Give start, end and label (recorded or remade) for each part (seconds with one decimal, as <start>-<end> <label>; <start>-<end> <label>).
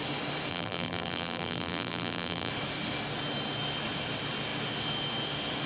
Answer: 0.0-0.5 recorded; 0.5-2.5 remade; 2.5-5.7 recorded